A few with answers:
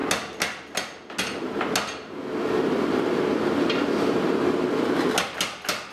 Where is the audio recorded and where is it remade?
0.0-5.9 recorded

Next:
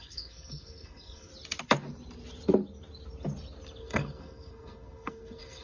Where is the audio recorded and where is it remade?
0.0-1.3 remade; 1.3-3.8 recorded; 3.8-5.6 remade